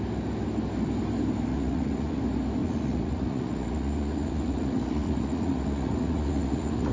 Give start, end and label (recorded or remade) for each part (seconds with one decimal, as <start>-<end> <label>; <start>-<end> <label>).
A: 0.0-1.5 recorded; 1.5-2.2 remade; 2.2-2.6 recorded; 2.6-6.9 remade